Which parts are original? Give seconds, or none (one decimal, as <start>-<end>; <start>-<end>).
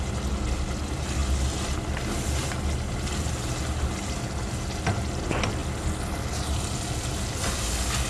0.0-8.1